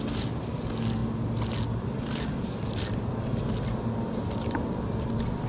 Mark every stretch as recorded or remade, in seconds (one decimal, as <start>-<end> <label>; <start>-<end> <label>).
0.0-5.5 recorded